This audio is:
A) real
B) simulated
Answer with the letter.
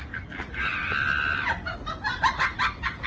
A